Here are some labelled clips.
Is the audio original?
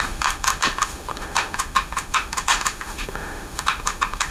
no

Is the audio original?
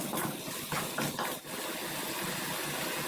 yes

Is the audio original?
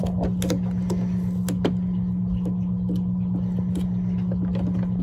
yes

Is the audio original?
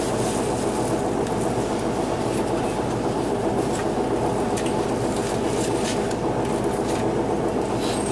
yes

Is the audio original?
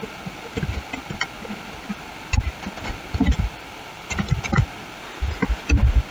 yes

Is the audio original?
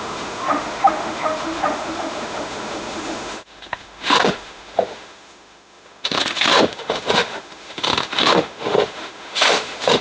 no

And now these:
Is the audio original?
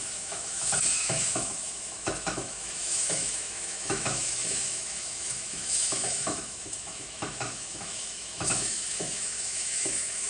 no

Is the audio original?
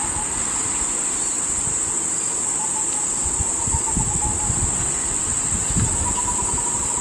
yes